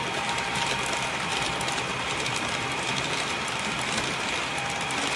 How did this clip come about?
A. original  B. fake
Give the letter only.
B